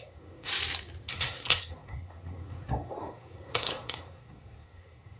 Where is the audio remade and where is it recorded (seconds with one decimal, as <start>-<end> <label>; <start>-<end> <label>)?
0.0-0.5 remade; 0.5-1.1 recorded; 1.1-5.2 remade

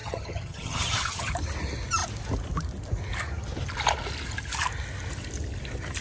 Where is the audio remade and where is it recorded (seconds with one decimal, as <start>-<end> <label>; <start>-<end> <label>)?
0.0-1.3 remade; 1.3-6.0 recorded

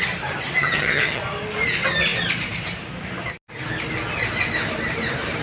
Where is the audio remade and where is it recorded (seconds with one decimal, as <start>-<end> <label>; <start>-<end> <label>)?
0.0-0.6 recorded; 0.6-1.2 remade; 1.2-5.4 recorded